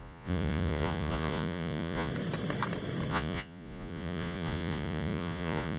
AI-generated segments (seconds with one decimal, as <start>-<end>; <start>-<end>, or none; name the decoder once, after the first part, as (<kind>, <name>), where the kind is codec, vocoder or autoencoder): 0.0-2.1 (vocoder, Vocos); 3.1-5.8